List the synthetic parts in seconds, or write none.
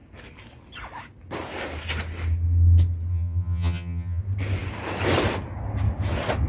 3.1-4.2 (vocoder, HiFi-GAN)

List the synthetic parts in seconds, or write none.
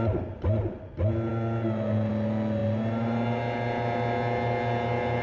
none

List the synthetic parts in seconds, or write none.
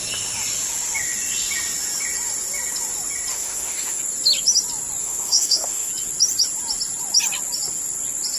3.3-4.0 (autoencoder, DAC-VAE); 5.0-5.9